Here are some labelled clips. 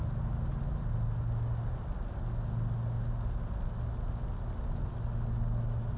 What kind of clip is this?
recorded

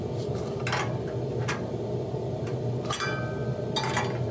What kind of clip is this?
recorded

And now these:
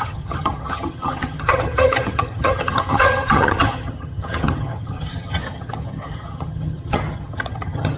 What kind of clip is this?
remade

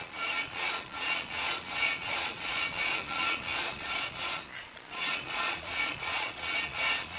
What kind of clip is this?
remade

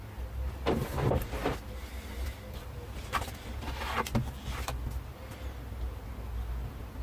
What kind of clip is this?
recorded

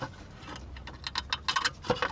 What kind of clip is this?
recorded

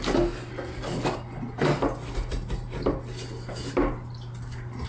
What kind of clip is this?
recorded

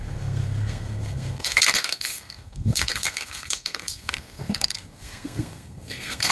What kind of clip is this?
remade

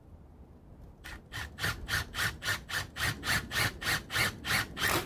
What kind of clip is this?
recorded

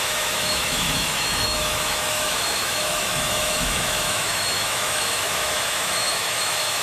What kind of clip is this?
remade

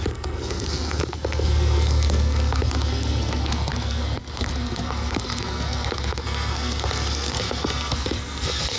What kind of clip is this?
remade